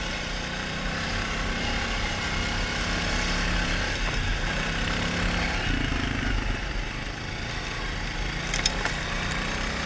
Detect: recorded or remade recorded